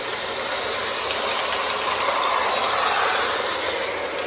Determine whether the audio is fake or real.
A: real